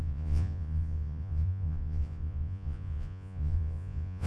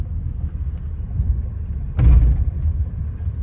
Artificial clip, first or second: first